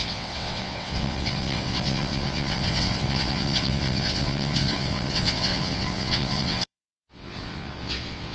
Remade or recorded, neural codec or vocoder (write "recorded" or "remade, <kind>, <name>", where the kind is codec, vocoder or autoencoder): remade, vocoder, WaveNeXt